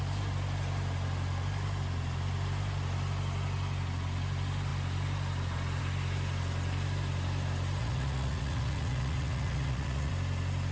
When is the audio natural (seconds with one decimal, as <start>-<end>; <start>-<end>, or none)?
0.0-7.8; 10.1-10.7